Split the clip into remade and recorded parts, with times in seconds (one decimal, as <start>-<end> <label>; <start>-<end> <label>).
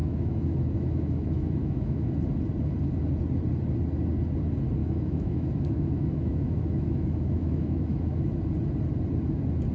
0.0-2.1 remade; 2.1-4.8 recorded; 4.8-8.4 remade; 8.4-9.7 recorded